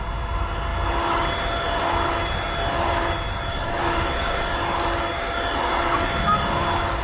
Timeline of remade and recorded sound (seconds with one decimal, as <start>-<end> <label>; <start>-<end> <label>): 0.0-3.5 recorded; 3.5-4.5 remade; 4.5-7.0 recorded